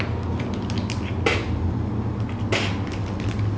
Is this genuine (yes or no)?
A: yes